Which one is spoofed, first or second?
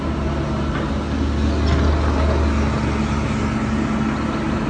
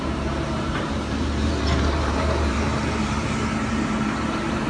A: second